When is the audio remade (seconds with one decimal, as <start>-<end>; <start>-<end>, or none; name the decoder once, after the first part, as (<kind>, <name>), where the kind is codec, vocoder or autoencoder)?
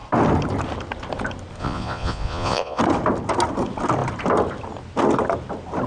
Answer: 1.6-2.8 (vocoder, Vocos)